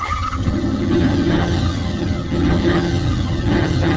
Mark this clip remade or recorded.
remade